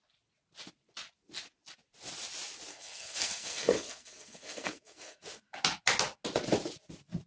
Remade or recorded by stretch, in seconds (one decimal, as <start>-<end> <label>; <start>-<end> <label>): 0.0-2.7 recorded; 2.7-5.2 remade; 5.2-7.3 recorded